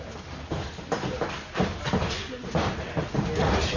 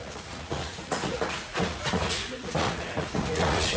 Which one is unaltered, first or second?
first